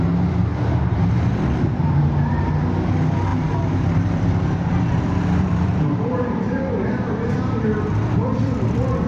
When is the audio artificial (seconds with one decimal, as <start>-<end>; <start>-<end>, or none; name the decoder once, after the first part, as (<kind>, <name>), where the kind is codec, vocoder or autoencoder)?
3.3-7.8 (vocoder, BigVGAN v2)